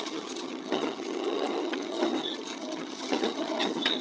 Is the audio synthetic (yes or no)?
yes